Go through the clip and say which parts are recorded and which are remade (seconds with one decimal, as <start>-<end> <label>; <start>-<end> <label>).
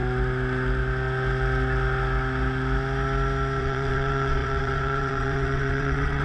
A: 0.0-3.6 recorded; 3.6-6.2 remade